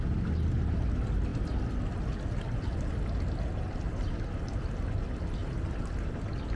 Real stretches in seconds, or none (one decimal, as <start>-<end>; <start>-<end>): 0.0-6.6